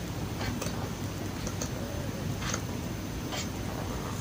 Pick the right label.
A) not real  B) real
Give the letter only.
A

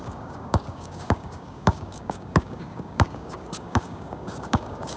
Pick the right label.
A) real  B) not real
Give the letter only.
B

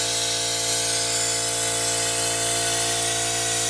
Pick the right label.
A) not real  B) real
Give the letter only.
B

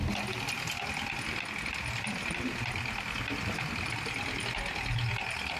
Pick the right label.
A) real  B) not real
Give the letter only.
A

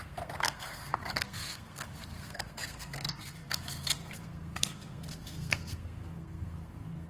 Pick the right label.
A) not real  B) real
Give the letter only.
A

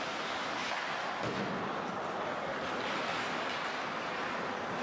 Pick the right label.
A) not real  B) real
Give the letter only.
B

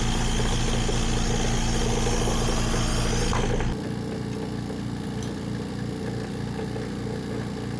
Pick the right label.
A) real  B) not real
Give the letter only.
A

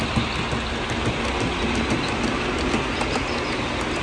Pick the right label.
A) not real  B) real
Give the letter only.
B